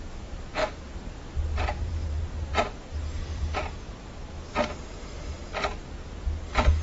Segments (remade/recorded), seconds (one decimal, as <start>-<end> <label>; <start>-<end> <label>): 0.0-6.8 recorded